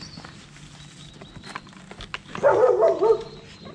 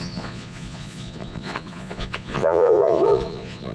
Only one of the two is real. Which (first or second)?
first